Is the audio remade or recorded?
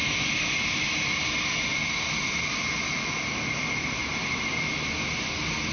recorded